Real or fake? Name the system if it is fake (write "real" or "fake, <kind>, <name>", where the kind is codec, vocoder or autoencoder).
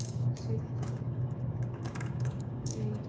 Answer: fake, codec, DAC